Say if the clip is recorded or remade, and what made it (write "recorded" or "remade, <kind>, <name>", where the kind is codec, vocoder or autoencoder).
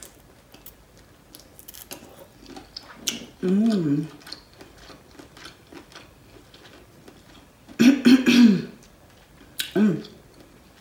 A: recorded